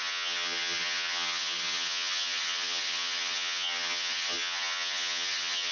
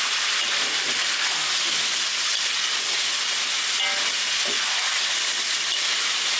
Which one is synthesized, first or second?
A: first